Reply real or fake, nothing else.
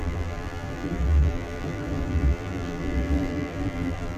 fake